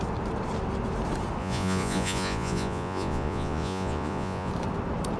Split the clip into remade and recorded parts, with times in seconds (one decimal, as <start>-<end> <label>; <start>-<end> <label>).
0.0-1.4 recorded; 1.4-4.5 remade; 4.5-5.2 recorded